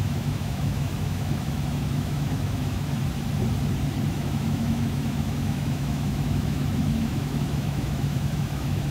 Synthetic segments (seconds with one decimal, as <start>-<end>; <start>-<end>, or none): 0.0-3.0; 4.1-8.9